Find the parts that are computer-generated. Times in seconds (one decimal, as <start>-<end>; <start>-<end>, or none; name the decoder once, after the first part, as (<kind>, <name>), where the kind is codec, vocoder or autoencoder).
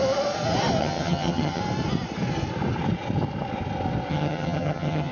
0.8-1.6 (vocoder, HiFi-GAN); 4.1-5.1